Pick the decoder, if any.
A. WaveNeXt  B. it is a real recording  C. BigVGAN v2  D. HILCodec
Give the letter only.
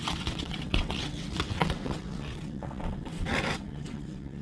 A